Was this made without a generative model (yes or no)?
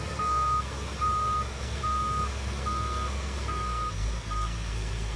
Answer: no